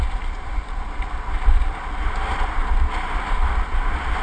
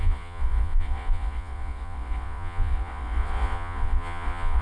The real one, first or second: first